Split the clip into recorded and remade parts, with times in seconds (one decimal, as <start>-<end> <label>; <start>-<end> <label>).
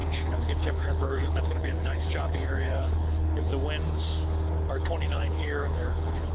0.0-3.5 remade; 3.5-4.7 recorded; 4.7-6.3 remade